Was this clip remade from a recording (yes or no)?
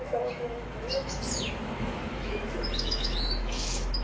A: yes